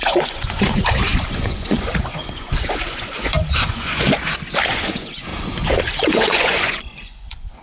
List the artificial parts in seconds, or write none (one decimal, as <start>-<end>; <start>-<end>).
0.0-4.1; 4.7-7.6